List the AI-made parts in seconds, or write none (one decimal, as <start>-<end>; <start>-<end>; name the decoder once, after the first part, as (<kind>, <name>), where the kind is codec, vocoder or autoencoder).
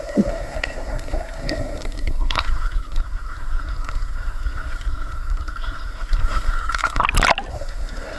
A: 0.0-7.0 (codec, SNAC); 7.5-8.2